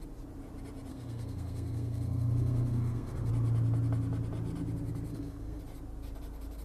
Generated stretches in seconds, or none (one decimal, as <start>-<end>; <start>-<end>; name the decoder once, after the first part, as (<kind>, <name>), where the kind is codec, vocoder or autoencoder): 0.9-3.3 (codec, SNAC); 5.1-5.6